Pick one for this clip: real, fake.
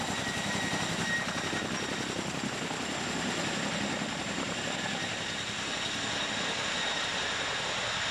real